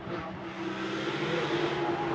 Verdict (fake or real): real